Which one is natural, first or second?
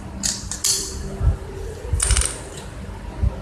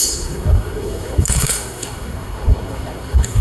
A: first